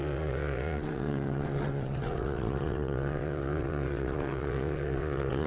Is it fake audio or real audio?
fake